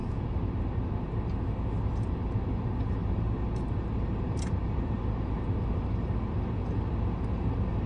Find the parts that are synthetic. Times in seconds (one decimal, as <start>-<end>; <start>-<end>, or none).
3.0-5.0